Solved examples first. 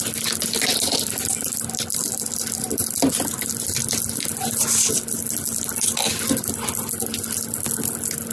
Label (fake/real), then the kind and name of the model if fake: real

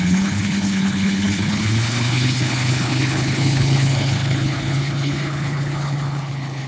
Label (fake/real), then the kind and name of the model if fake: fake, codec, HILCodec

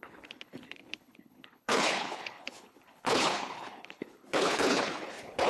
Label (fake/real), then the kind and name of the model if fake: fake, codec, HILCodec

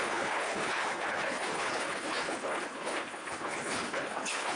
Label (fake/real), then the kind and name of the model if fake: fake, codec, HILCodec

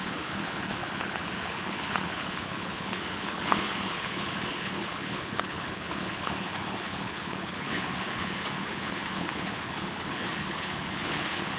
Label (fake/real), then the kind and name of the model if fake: fake, codec, HILCodec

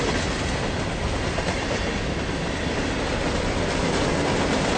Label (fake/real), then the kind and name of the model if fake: real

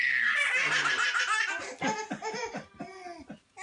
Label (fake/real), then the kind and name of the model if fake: real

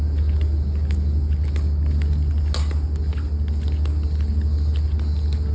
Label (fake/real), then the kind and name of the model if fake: real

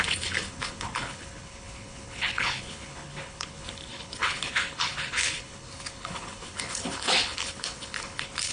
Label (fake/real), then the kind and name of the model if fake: fake, codec, HILCodec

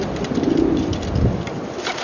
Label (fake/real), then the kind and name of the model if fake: real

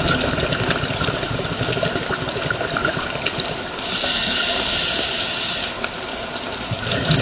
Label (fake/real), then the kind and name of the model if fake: real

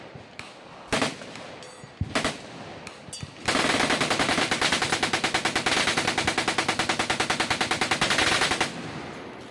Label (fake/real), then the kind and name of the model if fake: real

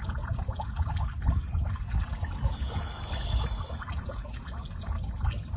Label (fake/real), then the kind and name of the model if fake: real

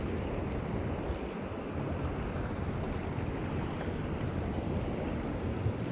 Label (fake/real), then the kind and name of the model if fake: real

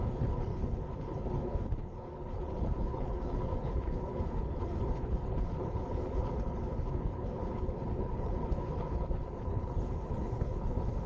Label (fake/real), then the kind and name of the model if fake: fake, codec, HILCodec